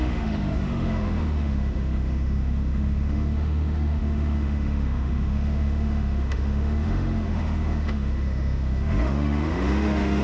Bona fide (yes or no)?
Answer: no